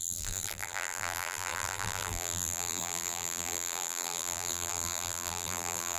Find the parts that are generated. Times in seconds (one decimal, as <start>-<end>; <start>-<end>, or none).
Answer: 0.0-6.0